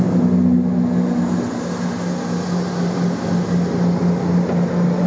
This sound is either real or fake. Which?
real